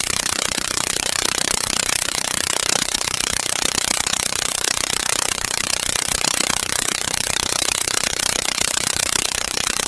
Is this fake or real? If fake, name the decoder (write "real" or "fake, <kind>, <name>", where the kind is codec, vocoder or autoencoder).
fake, vocoder, WaveNeXt